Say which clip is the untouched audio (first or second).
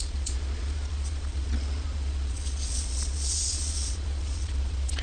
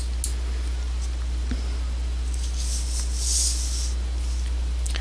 second